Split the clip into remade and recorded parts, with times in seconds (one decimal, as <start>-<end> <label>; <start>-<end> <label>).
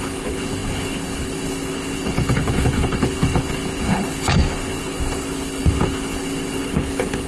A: 0.0-7.3 remade